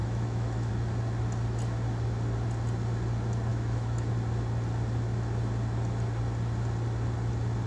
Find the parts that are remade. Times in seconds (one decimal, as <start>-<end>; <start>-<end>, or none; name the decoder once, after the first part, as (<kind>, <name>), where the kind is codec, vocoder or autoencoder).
0.0-0.7 (autoencoder, DAC-VAE); 3.5-4.1